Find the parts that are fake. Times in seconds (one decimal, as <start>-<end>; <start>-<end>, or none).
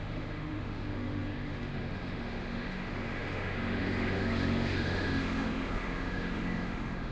0.0-7.1